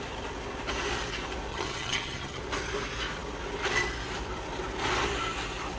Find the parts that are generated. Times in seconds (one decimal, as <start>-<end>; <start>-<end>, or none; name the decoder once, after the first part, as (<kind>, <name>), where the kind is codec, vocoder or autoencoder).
1.5-2.4 (vocoder, HiFi-GAN)